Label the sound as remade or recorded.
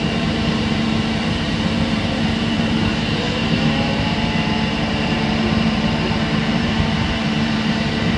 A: remade